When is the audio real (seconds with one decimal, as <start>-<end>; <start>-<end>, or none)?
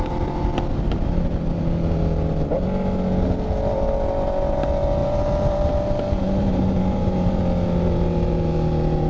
0.0-5.0; 7.4-9.1